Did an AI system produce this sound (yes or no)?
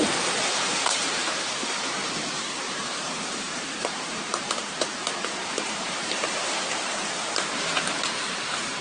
yes